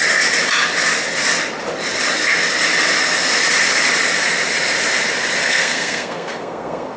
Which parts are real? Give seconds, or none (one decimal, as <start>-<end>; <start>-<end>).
0.0-5.4